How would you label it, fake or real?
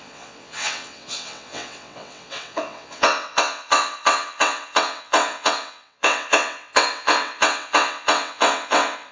fake